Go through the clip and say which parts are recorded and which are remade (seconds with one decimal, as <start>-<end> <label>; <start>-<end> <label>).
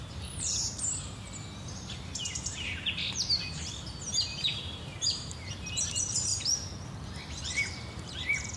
0.0-6.3 remade; 6.3-7.4 recorded; 7.4-8.6 remade